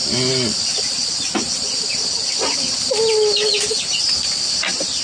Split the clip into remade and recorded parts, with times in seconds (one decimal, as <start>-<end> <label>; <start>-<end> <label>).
0.0-5.0 recorded